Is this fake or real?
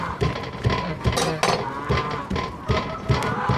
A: real